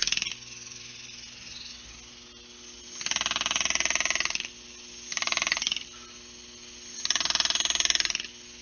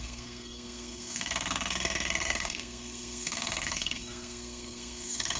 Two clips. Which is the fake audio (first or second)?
second